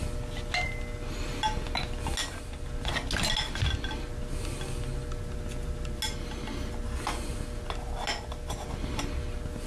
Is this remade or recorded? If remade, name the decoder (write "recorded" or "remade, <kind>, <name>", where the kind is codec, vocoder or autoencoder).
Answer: recorded